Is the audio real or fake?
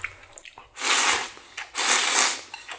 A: real